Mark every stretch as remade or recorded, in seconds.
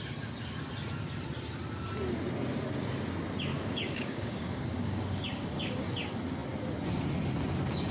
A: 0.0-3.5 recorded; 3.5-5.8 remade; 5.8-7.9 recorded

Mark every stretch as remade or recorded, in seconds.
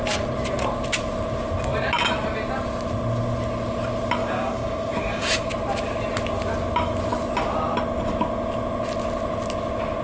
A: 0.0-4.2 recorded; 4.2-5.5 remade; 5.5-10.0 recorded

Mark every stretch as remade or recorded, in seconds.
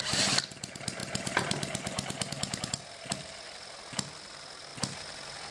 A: 0.0-5.5 recorded